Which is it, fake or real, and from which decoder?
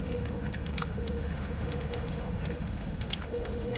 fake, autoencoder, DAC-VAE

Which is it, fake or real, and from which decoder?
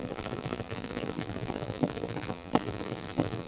fake, vocoder, BigVGAN v2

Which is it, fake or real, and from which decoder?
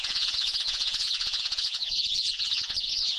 fake, vocoder, Vocos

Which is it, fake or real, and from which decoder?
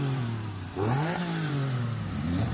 fake, vocoder, BigVGAN v2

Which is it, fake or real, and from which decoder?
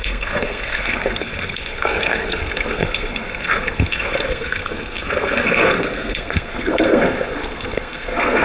fake, codec, SNAC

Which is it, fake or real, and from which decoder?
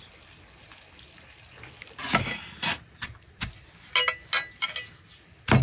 real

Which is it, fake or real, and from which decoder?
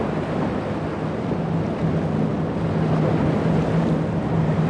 real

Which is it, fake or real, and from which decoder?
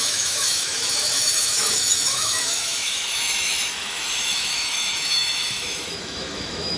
fake, autoencoder, DAC-VAE